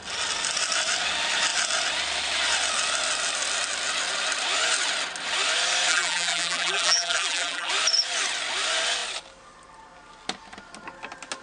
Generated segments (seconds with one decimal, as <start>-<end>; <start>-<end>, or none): 5.9-7.7